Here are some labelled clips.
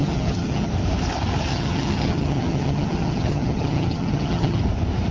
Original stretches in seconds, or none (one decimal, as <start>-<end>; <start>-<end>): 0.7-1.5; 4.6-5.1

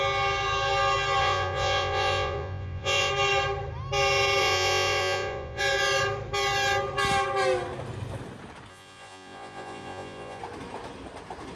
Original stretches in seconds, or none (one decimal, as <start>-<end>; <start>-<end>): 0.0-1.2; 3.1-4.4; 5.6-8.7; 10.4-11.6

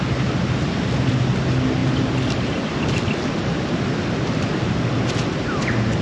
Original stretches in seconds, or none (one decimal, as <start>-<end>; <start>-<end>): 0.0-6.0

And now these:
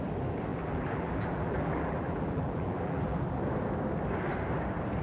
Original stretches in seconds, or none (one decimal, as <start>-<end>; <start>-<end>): 0.0-0.5; 3.4-5.0